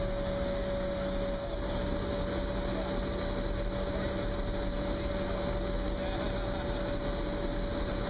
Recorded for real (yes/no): yes